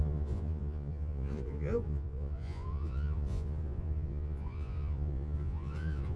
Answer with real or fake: fake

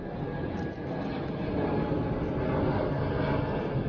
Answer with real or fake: real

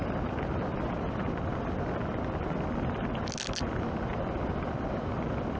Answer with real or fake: real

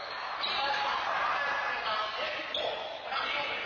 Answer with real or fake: real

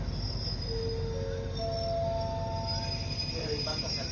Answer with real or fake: real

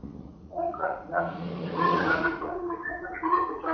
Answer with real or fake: fake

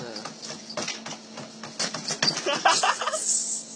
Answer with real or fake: real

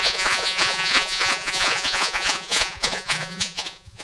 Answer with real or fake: fake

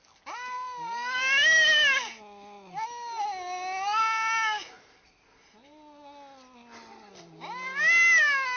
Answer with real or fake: real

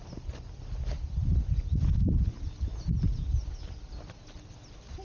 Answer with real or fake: real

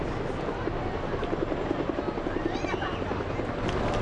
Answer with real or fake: real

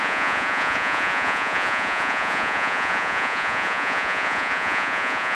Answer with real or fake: fake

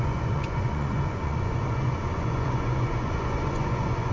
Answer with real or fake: fake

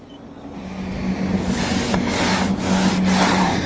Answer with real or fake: real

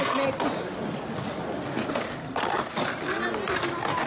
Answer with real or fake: real